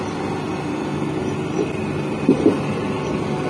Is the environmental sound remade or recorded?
recorded